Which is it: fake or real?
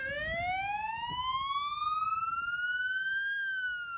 real